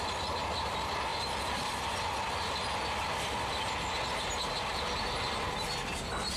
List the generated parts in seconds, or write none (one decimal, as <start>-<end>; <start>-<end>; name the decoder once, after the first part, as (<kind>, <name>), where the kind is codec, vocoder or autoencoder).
none